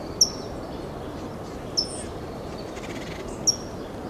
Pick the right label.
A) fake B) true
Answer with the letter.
B